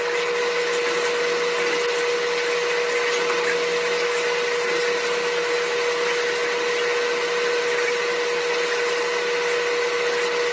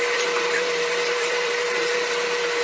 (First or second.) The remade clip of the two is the second